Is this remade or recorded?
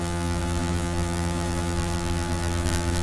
remade